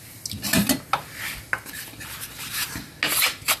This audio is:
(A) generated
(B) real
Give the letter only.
B